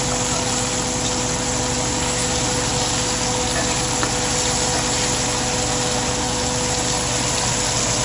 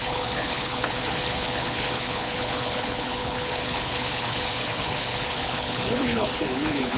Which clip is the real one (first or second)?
first